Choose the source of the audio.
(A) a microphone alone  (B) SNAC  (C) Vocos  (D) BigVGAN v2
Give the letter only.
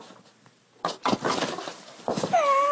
A